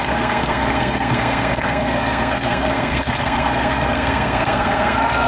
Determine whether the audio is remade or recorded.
remade